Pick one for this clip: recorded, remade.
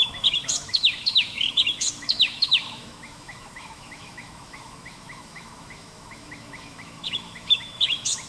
remade